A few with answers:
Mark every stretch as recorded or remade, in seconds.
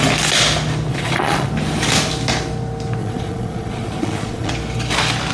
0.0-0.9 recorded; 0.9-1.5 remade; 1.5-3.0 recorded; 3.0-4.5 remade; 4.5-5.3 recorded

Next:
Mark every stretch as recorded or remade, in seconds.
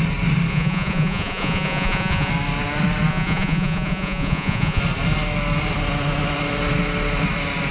0.0-0.5 recorded; 0.5-2.3 remade; 2.3-3.1 recorded; 3.1-4.8 remade; 4.8-7.7 recorded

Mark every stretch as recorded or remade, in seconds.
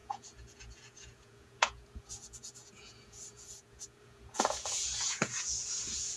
0.0-6.2 remade